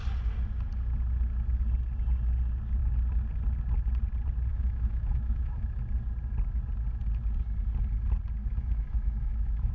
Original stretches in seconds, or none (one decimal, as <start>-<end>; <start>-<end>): 0.0-4.5; 5.8-8.4